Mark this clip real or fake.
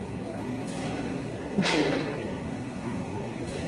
fake